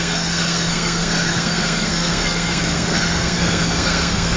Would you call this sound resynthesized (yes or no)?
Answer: yes